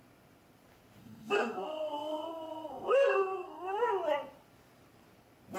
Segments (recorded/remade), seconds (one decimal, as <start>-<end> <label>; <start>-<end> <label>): 0.0-1.0 recorded; 1.0-3.9 remade; 3.9-5.6 recorded